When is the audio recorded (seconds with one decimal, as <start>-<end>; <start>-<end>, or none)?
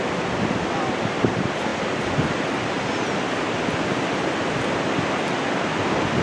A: 0.0-6.2